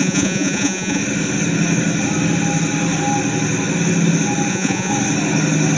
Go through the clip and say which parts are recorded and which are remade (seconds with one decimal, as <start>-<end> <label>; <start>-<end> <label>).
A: 0.0-1.0 remade; 1.0-4.5 recorded; 4.5-4.9 remade; 4.9-5.8 recorded